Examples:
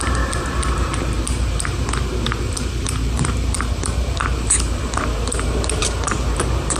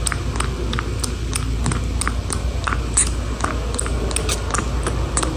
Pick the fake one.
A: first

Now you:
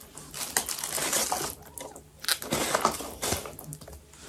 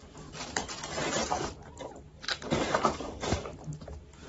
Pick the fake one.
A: second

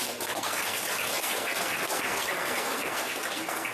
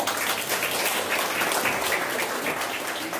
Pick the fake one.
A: first